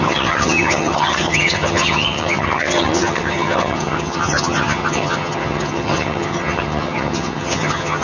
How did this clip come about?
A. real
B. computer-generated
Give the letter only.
B